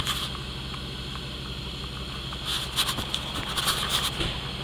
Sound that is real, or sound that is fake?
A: real